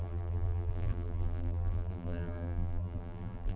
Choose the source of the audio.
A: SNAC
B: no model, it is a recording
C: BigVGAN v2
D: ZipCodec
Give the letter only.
C